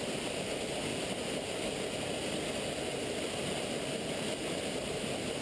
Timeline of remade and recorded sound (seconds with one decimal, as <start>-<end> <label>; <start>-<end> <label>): 0.0-5.4 recorded